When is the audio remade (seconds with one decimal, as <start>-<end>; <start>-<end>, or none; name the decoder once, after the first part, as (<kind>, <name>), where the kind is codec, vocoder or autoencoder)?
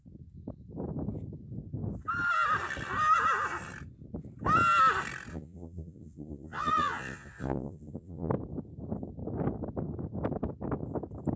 5.3-8.3 (vocoder, Vocos)